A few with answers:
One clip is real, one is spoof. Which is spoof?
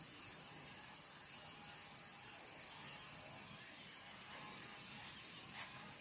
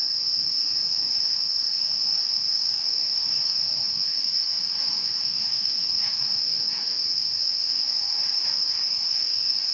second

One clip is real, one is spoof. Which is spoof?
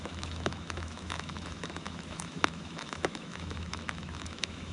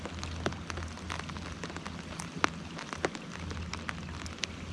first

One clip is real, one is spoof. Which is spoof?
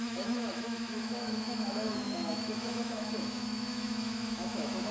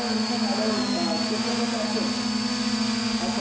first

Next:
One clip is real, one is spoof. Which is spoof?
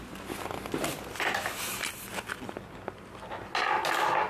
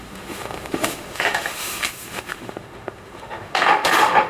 second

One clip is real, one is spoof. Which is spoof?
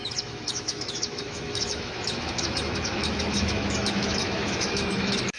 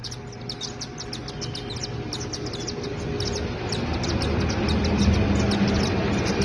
first